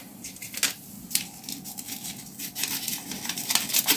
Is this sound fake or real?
real